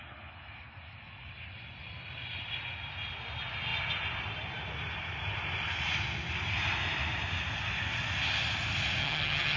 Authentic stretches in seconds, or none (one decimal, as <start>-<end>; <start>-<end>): 0.0-9.0